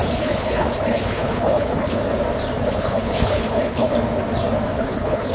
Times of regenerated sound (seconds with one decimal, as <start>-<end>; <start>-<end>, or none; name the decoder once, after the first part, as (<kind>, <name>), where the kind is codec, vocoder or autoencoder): 0.0-2.0 (codec, HILCodec); 2.7-3.9; 4.8-5.3